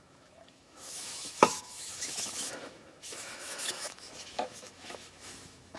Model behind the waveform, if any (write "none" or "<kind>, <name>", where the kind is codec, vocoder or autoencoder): autoencoder, DAC-VAE